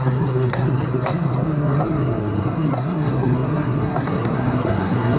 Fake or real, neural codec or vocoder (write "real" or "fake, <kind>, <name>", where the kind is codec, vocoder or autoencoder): fake, codec, SNAC